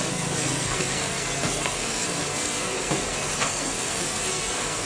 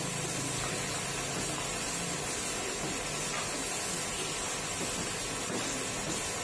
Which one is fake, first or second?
first